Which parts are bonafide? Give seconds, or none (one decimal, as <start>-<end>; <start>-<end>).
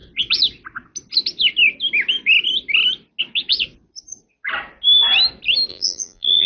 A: 0.0-5.7